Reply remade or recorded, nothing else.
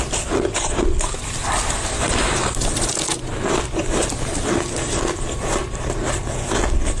recorded